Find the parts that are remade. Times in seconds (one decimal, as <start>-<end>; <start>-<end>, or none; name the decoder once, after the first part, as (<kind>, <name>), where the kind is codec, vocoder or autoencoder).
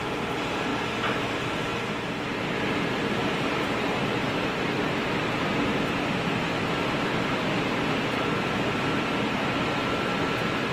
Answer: none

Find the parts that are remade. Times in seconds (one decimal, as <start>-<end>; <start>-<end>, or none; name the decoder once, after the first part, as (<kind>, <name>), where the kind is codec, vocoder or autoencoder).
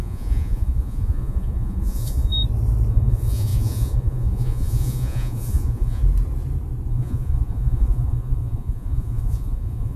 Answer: 0.0-2.3 (vocoder, Vocos); 2.9-6.0; 6.9-10.0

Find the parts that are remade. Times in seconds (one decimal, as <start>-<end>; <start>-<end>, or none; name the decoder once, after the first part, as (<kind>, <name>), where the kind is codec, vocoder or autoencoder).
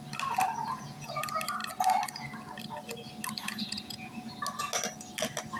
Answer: 0.6-1.2 (vocoder, Vocos); 3.4-4.1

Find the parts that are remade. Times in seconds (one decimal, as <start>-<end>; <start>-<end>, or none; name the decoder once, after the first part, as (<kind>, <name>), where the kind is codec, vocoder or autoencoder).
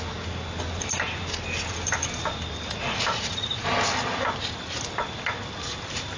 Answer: none